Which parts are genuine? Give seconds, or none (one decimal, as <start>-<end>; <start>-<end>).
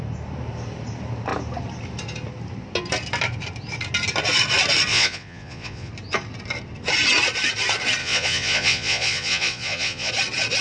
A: 0.0-4.9; 5.9-8.0; 10.1-10.6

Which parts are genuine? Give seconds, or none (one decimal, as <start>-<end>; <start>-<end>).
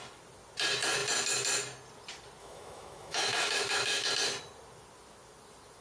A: 0.0-2.4; 4.1-5.8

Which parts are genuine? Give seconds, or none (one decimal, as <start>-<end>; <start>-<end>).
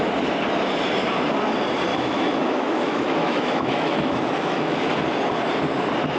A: 0.0-1.9; 4.9-6.2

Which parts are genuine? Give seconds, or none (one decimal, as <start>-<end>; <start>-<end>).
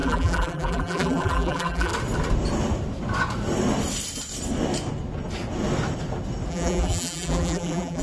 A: 1.9-6.5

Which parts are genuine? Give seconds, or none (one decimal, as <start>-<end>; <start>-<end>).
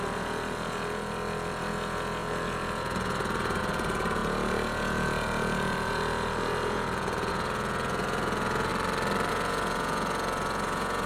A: 8.7-9.3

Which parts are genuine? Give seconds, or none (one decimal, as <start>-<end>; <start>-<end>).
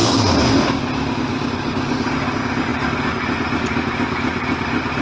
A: 0.0-1.3; 2.1-5.0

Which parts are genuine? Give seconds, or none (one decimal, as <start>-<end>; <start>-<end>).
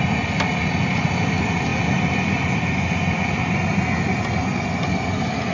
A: 0.0-5.5